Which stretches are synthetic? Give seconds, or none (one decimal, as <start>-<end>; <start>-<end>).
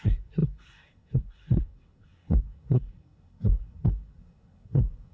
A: 0.0-5.1